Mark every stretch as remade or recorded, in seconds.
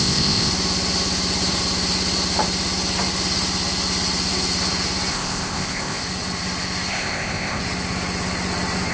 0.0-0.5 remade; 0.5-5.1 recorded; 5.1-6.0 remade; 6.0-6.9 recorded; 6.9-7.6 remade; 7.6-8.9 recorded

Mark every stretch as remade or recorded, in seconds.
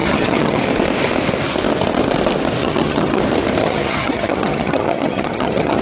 0.0-0.6 remade; 0.6-2.6 recorded; 2.6-3.2 remade; 3.2-3.6 recorded; 3.6-5.8 remade